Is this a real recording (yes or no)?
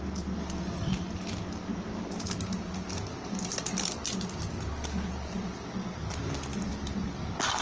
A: yes